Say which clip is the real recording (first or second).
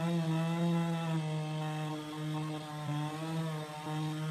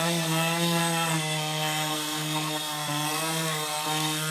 first